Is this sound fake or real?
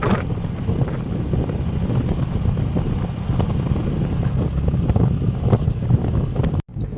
real